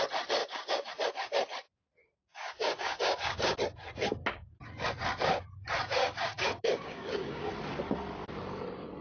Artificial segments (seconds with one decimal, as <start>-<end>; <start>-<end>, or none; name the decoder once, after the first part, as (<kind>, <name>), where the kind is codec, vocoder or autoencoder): 0.4-0.9 (codec, DAC); 2.2-3.6; 6.0-7.5